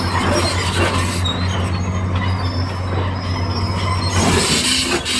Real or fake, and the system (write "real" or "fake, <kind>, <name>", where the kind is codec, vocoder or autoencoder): real